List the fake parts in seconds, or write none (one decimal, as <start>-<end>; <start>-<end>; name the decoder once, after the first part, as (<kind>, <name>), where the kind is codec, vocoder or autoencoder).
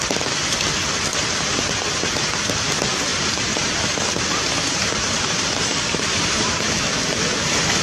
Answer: 1.1-1.7 (vocoder, BigVGAN v2); 3.1-6.7